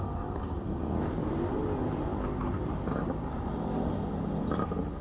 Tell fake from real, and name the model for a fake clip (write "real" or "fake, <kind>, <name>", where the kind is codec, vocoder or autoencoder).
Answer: real